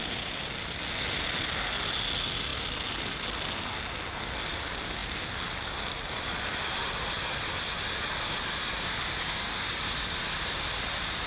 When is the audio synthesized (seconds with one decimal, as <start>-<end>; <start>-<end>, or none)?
9.2-9.8